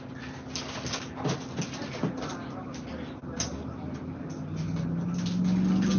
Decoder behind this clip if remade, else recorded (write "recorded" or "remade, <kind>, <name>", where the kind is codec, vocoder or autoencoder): recorded